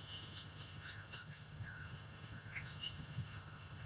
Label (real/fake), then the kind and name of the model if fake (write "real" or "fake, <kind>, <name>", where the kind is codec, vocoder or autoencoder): fake, autoencoder, DAC-VAE